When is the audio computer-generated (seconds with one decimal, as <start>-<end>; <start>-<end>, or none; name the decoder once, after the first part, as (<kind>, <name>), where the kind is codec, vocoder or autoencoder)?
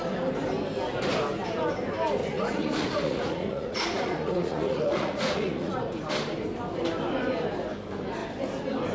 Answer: 2.2-5.7 (vocoder, Vocos)